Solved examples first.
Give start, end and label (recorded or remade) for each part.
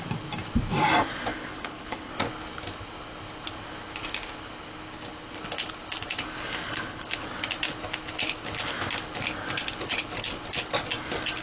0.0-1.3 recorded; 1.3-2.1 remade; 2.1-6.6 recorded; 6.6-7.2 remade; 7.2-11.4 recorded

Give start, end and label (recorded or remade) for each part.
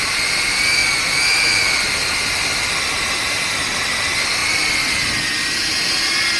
0.0-0.8 remade; 0.8-2.1 recorded; 2.1-4.4 remade; 4.4-6.4 recorded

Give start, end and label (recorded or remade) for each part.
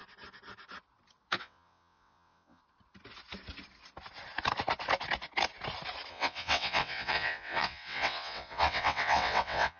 0.0-1.4 recorded; 1.4-2.6 remade; 2.6-6.1 recorded; 6.1-9.8 remade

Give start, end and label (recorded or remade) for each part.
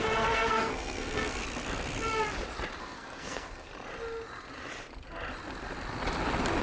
0.0-1.4 remade; 1.4-2.8 recorded; 2.8-3.7 remade; 3.7-6.6 recorded